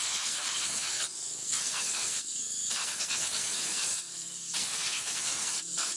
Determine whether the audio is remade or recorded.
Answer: remade